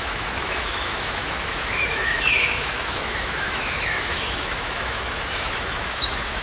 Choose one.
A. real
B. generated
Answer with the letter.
B